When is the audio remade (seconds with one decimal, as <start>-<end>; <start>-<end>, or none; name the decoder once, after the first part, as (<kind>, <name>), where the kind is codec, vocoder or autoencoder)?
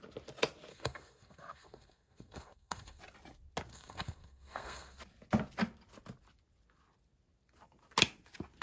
0.7-3.0 (codec, SNAC); 3.7-5.0